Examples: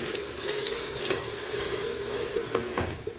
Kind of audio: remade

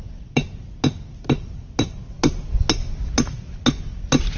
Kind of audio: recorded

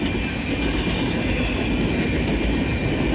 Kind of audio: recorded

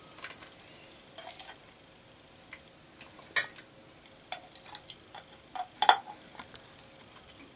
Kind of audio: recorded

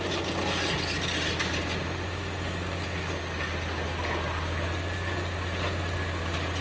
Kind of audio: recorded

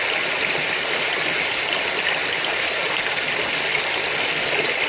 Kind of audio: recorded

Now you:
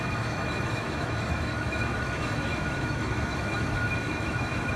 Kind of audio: remade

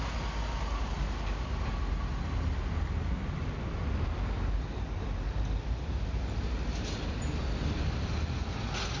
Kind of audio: recorded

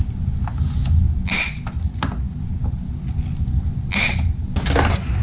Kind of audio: recorded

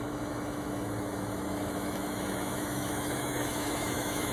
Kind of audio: remade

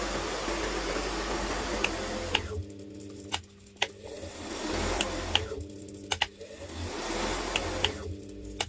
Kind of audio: recorded